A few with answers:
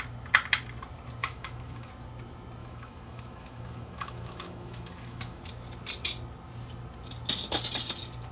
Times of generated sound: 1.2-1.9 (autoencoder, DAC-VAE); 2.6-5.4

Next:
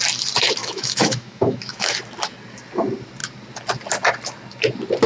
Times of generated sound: 0.6-1.9 (autoencoder, DAC-VAE)